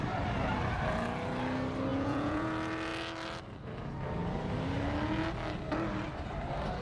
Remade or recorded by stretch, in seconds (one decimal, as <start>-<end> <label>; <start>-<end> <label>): 0.0-1.9 recorded; 1.9-2.5 remade; 2.5-6.8 recorded